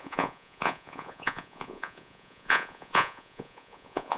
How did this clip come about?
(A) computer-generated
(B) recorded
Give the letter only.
A